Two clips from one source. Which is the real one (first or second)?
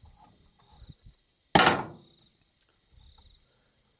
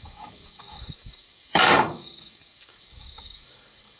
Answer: first